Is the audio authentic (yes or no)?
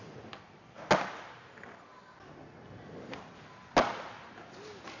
yes